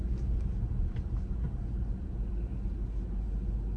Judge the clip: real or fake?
real